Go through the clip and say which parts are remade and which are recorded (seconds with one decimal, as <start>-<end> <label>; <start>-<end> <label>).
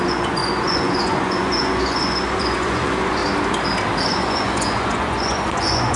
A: 0.0-3.2 remade; 3.2-4.0 recorded; 4.0-6.0 remade